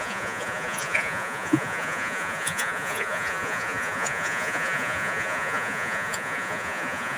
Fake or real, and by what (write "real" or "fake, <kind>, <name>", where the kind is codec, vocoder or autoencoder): fake, vocoder, Vocos